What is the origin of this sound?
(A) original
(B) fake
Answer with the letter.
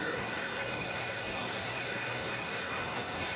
B